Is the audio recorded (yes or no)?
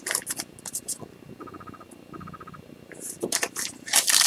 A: yes